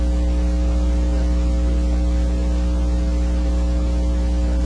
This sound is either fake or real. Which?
real